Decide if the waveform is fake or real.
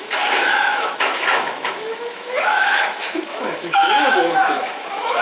fake